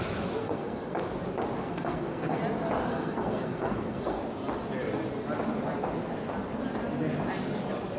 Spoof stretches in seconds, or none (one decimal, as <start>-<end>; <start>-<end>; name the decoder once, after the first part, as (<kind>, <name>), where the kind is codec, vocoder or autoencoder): 0.4-1.0 (codec, SNAC); 1.6-2.4; 2.9-4.2